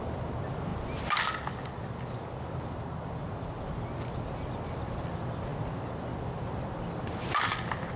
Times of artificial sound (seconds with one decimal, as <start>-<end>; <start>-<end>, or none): none